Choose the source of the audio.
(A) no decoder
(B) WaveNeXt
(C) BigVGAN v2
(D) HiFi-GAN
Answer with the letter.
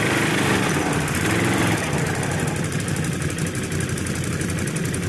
C